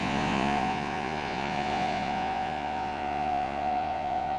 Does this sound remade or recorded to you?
remade